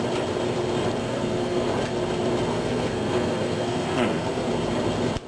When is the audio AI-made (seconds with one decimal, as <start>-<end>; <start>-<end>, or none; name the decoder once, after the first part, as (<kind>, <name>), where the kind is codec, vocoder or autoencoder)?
1.0-1.7 (codec, SNAC); 2.5-4.5